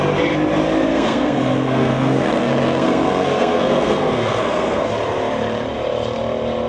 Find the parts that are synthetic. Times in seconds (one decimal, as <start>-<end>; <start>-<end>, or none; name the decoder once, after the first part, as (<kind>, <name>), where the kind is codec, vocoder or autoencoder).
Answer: 0.9-4.9 (codec, SNAC)